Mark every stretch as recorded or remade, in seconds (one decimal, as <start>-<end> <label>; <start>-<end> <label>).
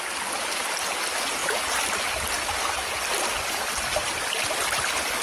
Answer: 0.0-5.2 recorded